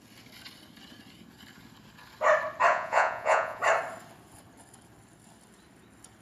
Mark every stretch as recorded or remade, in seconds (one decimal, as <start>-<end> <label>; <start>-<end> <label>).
0.0-2.7 recorded; 2.7-3.6 remade; 3.6-6.2 recorded